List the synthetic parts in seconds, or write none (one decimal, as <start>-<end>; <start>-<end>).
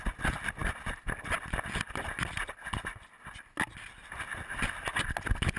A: none